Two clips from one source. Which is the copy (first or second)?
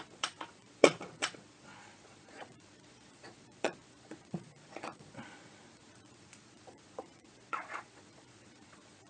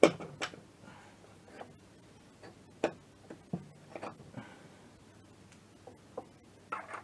first